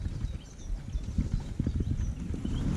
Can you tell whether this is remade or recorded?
recorded